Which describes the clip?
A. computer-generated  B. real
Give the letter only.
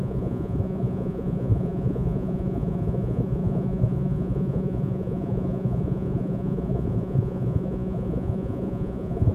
A